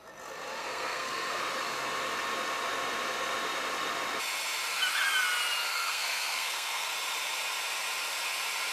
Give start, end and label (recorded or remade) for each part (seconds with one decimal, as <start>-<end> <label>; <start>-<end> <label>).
0.0-0.6 recorded; 0.6-1.4 remade; 1.4-5.7 recorded; 5.7-6.9 remade; 6.9-8.7 recorded